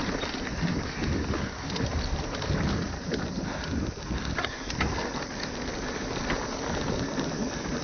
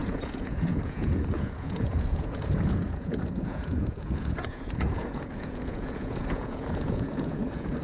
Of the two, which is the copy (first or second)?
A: second